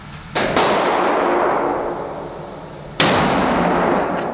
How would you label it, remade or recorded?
recorded